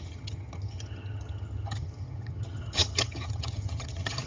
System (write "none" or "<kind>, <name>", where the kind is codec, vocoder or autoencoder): vocoder, HiFi-GAN